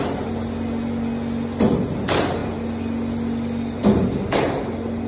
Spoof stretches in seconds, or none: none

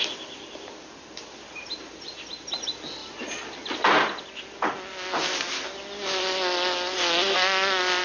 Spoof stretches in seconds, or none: none

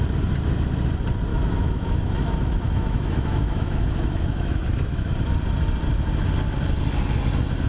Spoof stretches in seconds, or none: 1.3-5.3 (autoencoder, DAC-VAE)

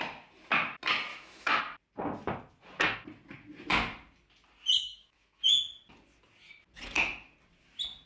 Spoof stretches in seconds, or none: 1.1-1.6 (autoencoder, DAC-VAE); 4.8-5.4

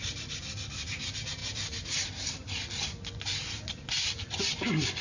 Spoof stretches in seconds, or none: none